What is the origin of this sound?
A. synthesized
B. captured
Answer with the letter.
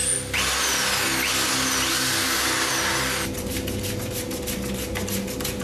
B